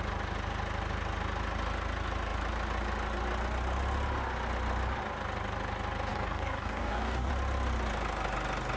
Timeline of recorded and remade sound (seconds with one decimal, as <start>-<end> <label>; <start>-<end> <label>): 0.0-6.1 recorded; 6.1-7.3 remade; 7.3-8.8 recorded